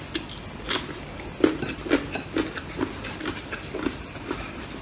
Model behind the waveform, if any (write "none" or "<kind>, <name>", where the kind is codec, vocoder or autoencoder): none